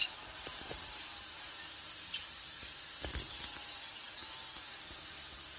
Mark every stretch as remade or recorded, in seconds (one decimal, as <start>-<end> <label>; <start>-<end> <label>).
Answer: 0.0-3.4 remade; 3.4-5.6 recorded